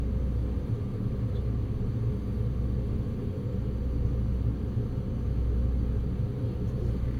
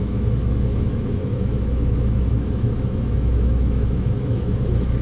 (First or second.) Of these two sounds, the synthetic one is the second